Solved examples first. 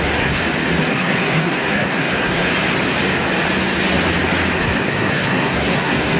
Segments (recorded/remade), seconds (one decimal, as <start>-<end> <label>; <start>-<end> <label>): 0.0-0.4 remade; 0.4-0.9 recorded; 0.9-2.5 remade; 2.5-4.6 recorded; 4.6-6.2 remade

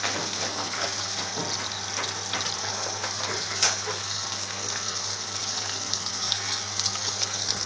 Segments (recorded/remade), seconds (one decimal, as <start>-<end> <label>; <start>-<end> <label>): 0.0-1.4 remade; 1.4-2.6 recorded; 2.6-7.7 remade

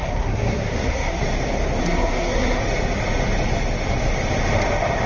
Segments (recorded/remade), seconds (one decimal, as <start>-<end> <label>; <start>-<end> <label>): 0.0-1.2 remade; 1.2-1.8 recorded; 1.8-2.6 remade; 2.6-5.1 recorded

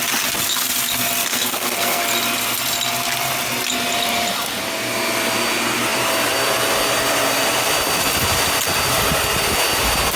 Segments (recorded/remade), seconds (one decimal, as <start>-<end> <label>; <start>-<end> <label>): 0.0-1.3 recorded; 1.3-2.0 remade; 2.0-10.2 recorded

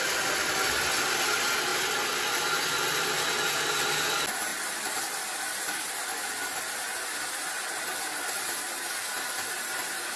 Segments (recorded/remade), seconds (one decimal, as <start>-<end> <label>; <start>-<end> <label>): 0.0-10.2 recorded